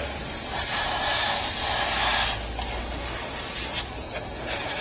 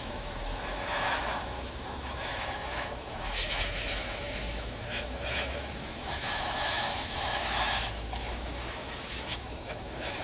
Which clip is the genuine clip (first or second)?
first